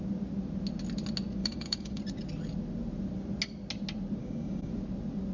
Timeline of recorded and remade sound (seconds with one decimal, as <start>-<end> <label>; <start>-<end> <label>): 0.0-1.4 recorded; 1.4-2.0 remade; 2.0-4.2 recorded; 4.2-4.7 remade; 4.7-5.3 recorded